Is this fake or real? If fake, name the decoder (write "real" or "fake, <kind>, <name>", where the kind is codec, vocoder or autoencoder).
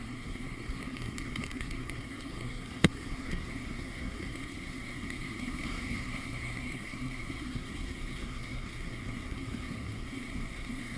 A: fake, codec, SNAC